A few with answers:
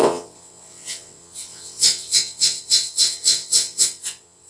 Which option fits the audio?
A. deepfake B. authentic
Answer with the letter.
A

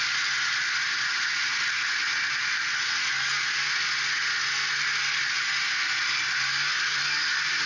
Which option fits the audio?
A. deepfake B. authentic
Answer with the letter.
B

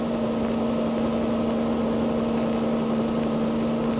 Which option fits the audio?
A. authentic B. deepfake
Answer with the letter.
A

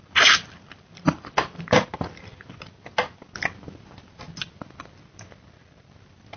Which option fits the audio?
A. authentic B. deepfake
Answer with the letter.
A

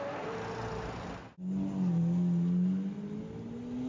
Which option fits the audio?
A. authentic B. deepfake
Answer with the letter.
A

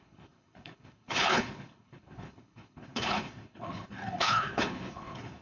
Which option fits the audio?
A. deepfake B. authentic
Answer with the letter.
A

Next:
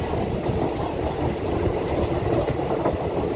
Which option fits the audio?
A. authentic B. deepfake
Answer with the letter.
A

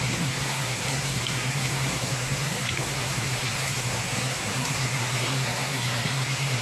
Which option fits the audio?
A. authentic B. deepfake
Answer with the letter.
B